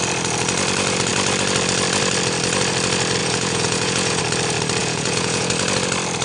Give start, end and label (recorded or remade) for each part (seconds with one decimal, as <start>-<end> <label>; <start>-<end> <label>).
0.0-3.2 recorded; 3.2-4.2 remade; 4.2-4.8 recorded; 4.8-5.5 remade; 5.5-6.2 recorded